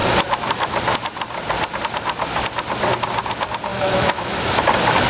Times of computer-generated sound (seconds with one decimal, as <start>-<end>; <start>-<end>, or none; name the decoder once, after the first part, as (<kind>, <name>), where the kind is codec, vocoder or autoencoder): 3.7-4.5 (autoencoder, DAC-VAE)